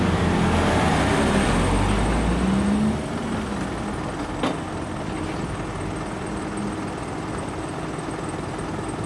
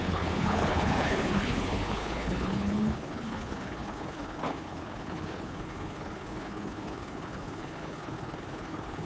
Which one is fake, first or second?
second